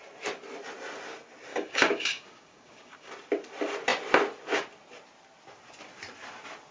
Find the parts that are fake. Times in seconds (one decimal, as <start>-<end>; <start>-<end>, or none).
1.5-3.1